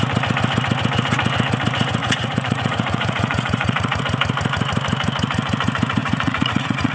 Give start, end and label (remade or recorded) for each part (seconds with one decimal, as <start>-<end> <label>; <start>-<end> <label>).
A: 0.0-2.0 recorded; 2.0-4.0 remade; 4.0-6.0 recorded; 6.0-6.9 remade